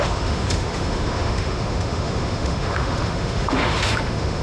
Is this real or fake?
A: fake